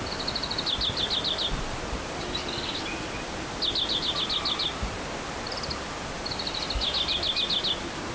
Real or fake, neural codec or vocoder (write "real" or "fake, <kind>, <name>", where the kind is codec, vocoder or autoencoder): real